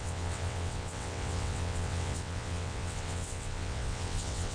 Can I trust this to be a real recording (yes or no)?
no